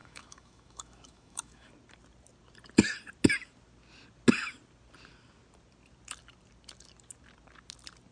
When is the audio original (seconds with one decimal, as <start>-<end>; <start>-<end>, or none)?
1.7-8.1